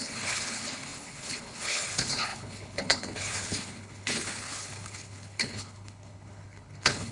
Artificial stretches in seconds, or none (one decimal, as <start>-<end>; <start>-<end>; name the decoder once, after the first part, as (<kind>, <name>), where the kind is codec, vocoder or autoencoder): 0.0-7.1 (codec, HILCodec)